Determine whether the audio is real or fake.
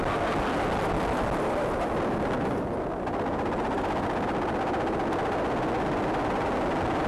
real